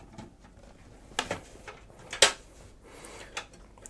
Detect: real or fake real